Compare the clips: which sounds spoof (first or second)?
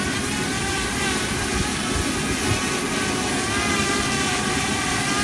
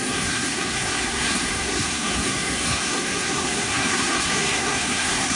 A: second